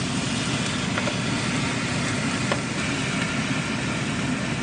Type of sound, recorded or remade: recorded